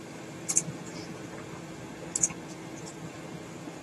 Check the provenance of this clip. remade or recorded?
recorded